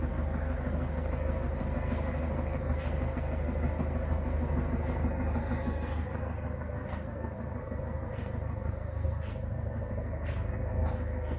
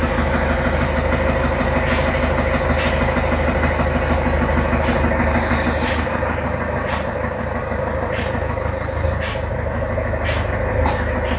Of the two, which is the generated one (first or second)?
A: first